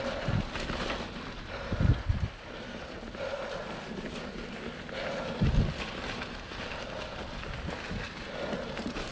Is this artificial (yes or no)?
no